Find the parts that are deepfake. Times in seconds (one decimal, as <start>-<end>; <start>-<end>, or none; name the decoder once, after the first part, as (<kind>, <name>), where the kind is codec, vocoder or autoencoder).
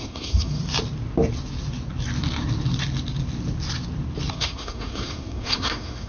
0.0-0.6 (codec, SNAC); 4.3-6.1